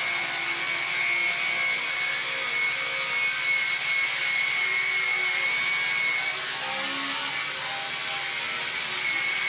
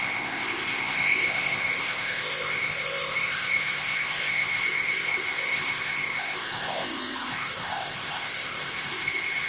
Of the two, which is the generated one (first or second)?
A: second